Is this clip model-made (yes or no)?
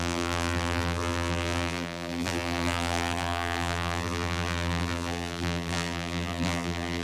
yes